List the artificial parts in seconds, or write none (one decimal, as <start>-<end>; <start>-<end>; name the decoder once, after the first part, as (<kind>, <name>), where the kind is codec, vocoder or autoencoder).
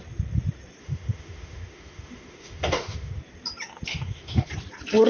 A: 0.8-3.2 (autoencoder, DAC-VAE); 3.9-4.5